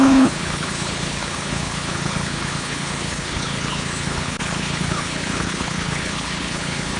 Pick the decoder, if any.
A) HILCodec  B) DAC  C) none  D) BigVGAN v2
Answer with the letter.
A